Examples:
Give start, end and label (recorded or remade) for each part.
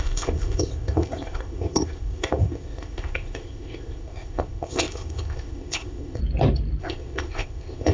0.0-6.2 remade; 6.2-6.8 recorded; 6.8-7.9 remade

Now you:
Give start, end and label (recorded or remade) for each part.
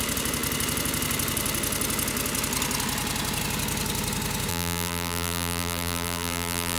0.0-4.5 recorded; 4.5-6.8 remade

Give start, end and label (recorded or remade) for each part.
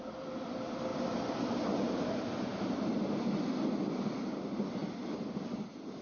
0.0-6.0 recorded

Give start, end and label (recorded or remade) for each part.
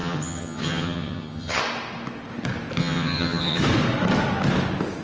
0.0-1.6 remade; 1.6-2.8 recorded; 2.8-3.6 remade; 3.6-5.0 recorded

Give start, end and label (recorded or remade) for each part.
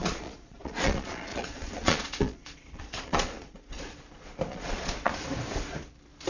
0.0-3.8 remade; 3.8-4.5 recorded; 4.5-5.1 remade; 5.1-6.3 recorded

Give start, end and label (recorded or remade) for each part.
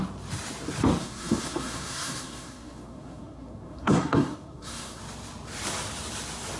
0.0-1.0 recorded; 1.0-5.0 remade; 5.0-6.6 recorded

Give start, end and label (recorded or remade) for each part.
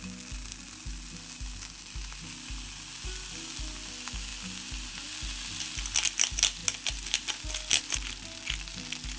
0.0-9.2 recorded